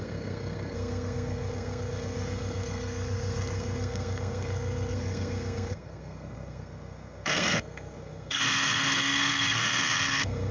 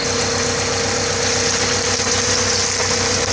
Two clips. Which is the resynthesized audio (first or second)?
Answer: first